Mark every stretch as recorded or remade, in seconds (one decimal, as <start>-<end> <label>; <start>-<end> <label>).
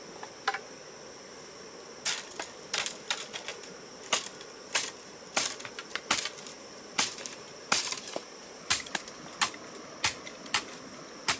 0.0-6.5 recorded; 6.5-9.0 remade; 9.0-11.4 recorded